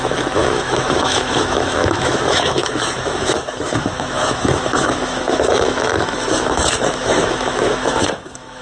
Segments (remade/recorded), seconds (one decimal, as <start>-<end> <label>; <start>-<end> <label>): 0.0-8.6 remade